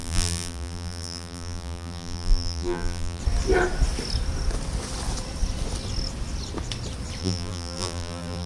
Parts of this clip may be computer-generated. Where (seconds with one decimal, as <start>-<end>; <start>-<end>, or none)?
0.0-3.2; 7.2-8.5